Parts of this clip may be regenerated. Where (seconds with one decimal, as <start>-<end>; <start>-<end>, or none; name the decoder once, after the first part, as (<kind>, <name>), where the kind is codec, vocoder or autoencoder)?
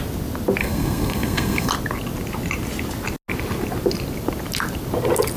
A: 0.6-1.7 (codec, SNAC)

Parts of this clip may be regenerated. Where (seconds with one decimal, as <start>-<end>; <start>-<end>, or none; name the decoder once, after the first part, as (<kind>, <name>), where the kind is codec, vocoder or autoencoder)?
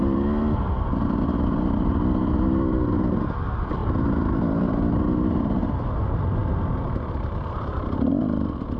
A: none